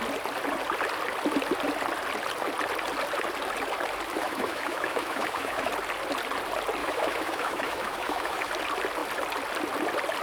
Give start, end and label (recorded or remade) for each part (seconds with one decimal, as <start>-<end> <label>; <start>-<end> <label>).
0.0-4.2 recorded; 4.2-5.7 remade; 5.7-6.8 recorded; 6.8-8.5 remade; 8.5-10.2 recorded